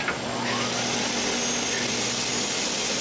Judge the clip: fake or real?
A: real